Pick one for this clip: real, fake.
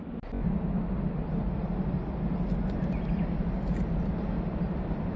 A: real